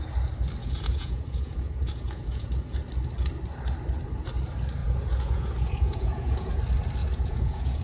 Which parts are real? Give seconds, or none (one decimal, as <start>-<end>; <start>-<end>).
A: 0.0-0.6; 2.8-4.8; 6.6-7.0

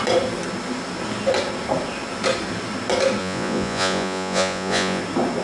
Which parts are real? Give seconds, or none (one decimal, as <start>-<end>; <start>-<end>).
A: 0.0-3.2; 5.0-5.4

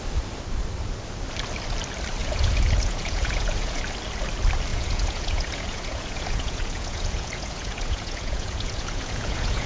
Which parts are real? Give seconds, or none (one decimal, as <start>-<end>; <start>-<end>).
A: 0.0-2.2; 3.8-4.7

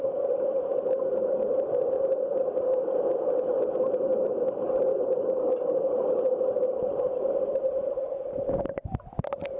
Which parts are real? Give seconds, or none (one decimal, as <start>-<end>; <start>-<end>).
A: 0.0-9.6